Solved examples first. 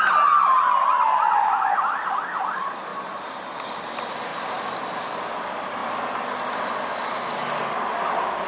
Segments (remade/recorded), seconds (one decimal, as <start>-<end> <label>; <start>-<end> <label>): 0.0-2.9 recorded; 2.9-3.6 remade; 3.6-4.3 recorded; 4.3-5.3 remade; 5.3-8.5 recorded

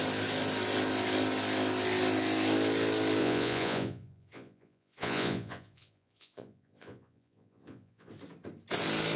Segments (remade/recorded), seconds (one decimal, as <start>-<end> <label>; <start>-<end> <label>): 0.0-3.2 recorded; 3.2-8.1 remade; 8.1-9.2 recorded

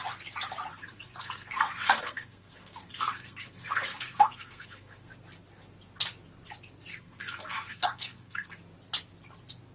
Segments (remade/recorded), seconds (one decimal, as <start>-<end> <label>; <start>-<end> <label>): 0.0-0.7 recorded; 0.7-5.1 remade; 5.1-6.9 recorded; 6.9-8.5 remade; 8.5-9.7 recorded

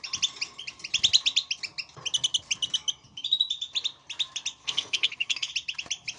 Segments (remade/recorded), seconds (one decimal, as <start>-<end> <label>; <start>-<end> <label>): 0.0-4.6 recorded; 4.6-5.5 remade; 5.5-6.2 recorded

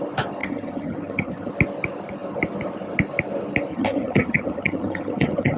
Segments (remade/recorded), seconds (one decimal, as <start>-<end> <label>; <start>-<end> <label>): 0.0-0.4 recorded; 0.4-1.5 remade; 1.5-3.7 recorded; 3.7-5.6 remade

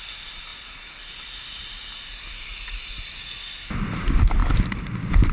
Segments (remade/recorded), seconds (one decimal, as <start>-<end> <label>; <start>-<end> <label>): 0.0-5.3 recorded

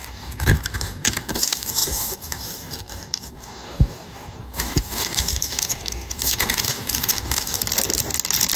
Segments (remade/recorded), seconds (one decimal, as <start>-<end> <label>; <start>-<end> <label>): 0.0-7.6 remade; 7.6-8.6 recorded

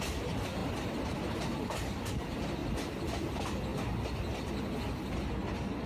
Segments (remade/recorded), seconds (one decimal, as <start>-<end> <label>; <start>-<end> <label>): 0.0-5.9 recorded